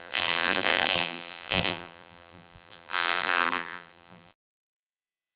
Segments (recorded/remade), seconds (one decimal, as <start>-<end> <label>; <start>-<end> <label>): 0.0-5.4 remade